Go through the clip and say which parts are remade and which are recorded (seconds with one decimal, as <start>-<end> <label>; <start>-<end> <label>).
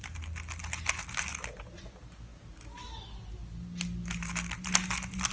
0.0-5.3 recorded